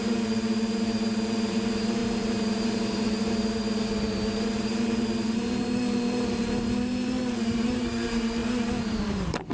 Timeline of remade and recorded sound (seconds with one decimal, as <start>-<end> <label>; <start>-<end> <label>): 0.0-8.4 remade; 8.4-8.9 recorded; 8.9-9.5 remade